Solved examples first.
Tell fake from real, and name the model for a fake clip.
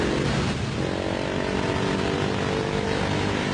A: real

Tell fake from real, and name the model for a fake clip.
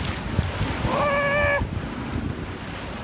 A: real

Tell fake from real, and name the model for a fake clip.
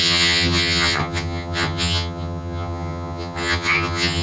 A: fake, vocoder, HiFi-GAN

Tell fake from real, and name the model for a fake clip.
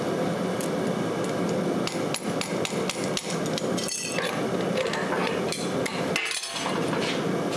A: real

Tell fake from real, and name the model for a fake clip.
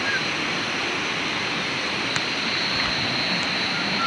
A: fake, vocoder, BigVGAN v2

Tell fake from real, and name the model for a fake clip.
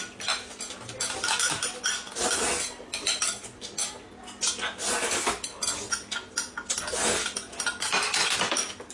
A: real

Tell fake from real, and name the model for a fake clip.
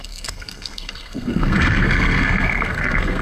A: fake, codec, SNAC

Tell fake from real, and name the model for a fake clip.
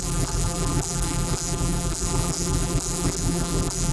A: fake, vocoder, BigVGAN v2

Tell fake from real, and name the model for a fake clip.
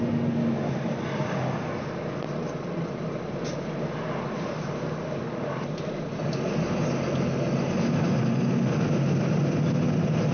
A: real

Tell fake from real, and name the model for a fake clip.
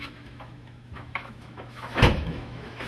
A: fake, autoencoder, DAC-VAE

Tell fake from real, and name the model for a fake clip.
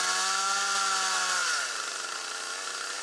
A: real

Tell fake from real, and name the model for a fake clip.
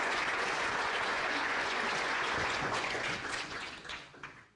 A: fake, vocoder, Vocos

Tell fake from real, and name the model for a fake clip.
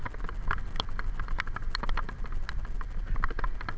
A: real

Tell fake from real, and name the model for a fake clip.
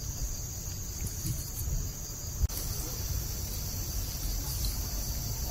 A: real